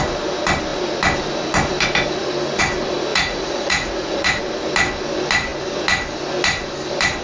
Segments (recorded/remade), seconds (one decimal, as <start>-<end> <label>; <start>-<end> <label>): 0.0-3.1 recorded; 3.1-4.4 remade; 4.4-7.2 recorded